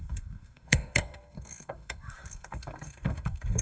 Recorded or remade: remade